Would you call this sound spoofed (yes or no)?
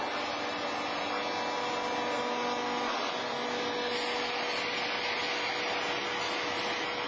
no